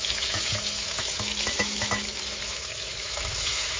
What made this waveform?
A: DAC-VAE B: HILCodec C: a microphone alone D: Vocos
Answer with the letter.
A